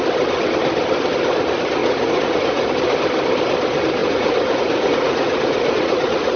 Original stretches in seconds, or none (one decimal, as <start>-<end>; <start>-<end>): 0.0-1.8; 2.7-4.0